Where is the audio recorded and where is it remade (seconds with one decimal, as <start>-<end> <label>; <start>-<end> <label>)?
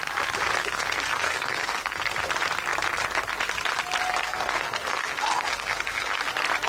0.0-0.6 recorded; 0.6-2.3 remade; 2.3-4.2 recorded; 4.2-6.2 remade; 6.2-6.7 recorded